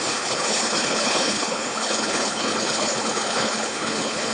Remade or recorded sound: remade